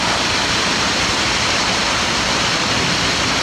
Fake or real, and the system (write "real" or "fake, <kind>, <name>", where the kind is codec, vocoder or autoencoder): real